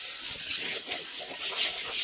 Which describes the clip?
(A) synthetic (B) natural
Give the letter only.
B